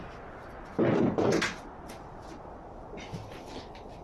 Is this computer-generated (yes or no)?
no